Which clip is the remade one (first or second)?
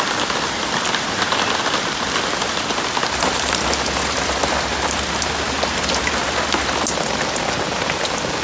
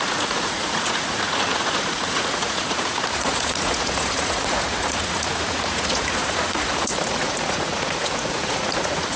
second